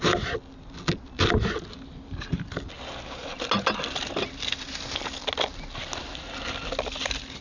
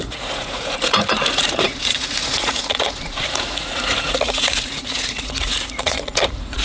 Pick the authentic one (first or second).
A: first